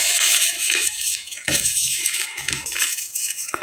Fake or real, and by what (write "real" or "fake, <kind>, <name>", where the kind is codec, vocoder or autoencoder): fake, autoencoder, DAC-VAE